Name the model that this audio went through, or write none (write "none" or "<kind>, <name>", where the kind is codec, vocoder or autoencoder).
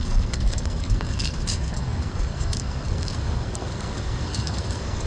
codec, SNAC